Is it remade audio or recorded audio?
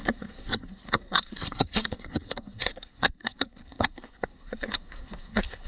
remade